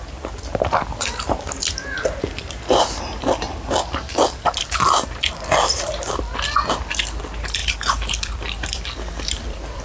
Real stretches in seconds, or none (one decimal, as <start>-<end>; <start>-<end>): 0.0-7.6